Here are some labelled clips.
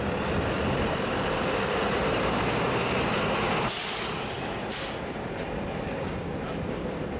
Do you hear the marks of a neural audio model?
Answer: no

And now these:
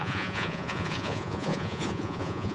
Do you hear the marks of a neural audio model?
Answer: yes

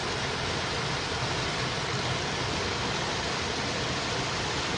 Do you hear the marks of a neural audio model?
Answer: no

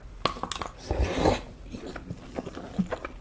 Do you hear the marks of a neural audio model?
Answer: no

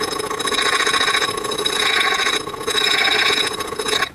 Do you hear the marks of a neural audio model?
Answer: yes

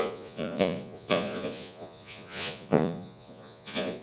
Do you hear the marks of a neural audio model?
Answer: yes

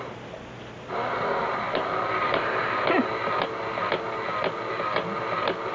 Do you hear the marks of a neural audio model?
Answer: no